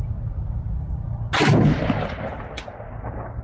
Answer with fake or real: real